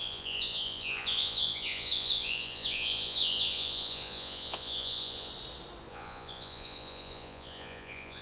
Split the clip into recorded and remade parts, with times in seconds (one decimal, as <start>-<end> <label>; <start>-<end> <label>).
0.0-5.3 remade; 5.3-5.9 recorded; 5.9-8.2 remade